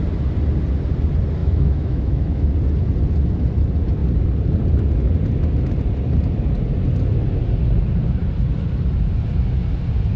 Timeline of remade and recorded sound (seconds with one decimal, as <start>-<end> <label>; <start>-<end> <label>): 0.0-1.4 recorded; 1.4-2.5 remade; 2.5-10.2 recorded